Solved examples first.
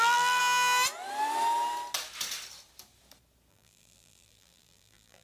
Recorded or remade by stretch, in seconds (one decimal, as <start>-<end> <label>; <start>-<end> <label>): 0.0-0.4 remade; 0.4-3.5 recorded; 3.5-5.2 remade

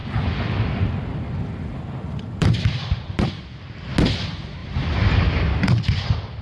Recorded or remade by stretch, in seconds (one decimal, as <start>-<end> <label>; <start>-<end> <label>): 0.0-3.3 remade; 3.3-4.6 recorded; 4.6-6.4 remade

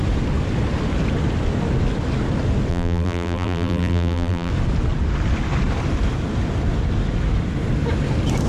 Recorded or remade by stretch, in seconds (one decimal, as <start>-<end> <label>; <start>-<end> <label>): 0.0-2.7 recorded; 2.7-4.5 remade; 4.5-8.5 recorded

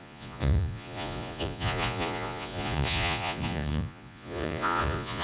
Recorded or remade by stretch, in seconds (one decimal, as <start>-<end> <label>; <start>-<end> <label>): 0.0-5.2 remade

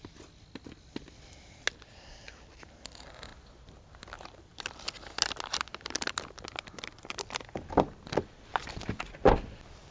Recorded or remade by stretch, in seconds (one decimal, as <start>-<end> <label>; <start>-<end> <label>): 0.0-9.9 recorded

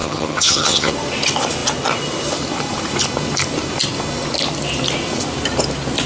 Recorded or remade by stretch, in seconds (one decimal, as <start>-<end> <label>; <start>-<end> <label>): 0.0-0.9 remade; 0.9-6.1 recorded

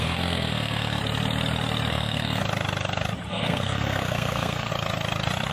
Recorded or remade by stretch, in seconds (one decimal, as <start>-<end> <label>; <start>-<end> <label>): 0.0-1.0 remade; 1.0-1.9 recorded; 1.9-2.4 remade; 2.4-3.3 recorded; 3.3-4.7 remade; 4.7-5.5 recorded

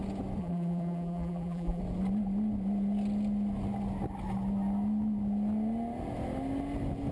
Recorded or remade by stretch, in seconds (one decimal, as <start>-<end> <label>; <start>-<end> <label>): 0.0-0.4 recorded; 0.4-1.8 remade; 1.8-7.1 recorded